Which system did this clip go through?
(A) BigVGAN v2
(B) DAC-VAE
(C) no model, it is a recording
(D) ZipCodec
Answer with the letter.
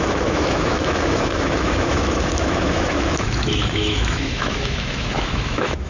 B